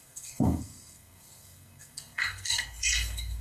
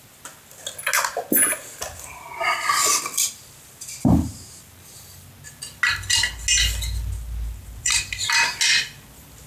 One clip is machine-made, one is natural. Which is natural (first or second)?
second